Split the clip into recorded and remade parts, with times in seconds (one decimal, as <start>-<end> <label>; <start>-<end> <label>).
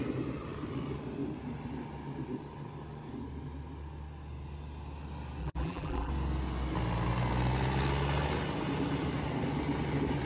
0.0-5.4 recorded; 5.4-6.1 remade; 6.1-10.3 recorded